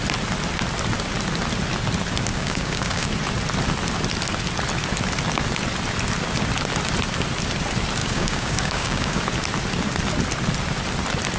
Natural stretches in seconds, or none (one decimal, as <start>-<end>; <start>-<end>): 0.0-2.3; 3.1-8.0; 9.2-11.4